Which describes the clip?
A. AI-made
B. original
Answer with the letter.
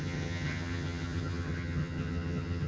A